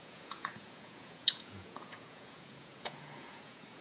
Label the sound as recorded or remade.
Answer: remade